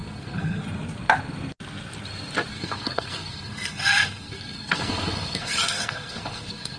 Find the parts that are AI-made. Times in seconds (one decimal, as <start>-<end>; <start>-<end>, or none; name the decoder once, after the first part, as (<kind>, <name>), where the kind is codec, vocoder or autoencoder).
0.0-0.6 (codec, SNAC); 2.5-6.8